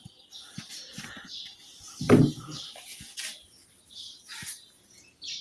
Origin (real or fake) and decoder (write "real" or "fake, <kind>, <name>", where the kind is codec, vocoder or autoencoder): real